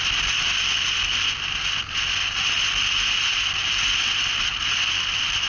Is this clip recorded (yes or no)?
yes